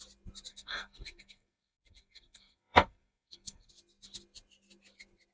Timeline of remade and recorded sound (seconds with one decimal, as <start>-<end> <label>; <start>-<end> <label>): 0.0-0.5 recorded; 0.5-3.7 remade; 3.7-5.3 recorded